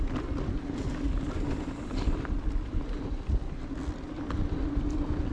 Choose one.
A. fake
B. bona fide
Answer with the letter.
B